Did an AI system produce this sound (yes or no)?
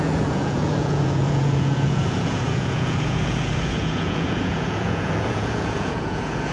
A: yes